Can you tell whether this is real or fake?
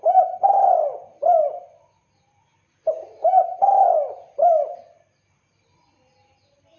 real